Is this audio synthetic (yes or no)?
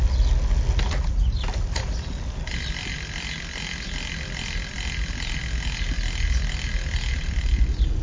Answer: no